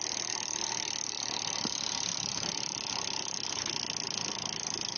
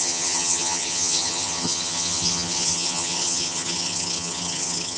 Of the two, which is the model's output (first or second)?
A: second